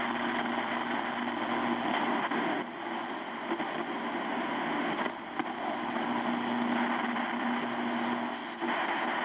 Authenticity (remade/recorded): recorded